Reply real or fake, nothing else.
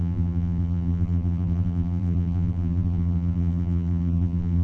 fake